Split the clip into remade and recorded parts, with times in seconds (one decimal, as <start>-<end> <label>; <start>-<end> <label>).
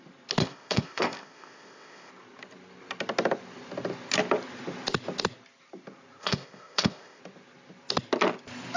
0.0-0.4 recorded; 0.4-2.1 remade; 2.1-6.2 recorded; 6.2-7.2 remade; 7.2-8.8 recorded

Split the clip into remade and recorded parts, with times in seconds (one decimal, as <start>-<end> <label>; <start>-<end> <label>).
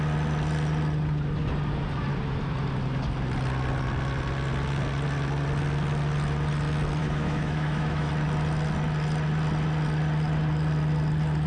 0.0-7.0 recorded; 7.0-8.1 remade; 8.1-11.5 recorded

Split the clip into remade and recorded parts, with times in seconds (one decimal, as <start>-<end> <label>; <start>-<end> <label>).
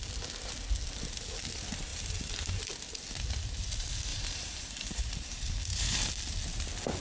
0.0-1.9 recorded; 1.9-2.6 remade; 2.6-4.1 recorded; 4.1-6.1 remade; 6.1-7.0 recorded